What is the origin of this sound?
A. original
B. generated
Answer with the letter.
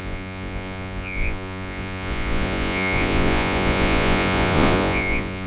B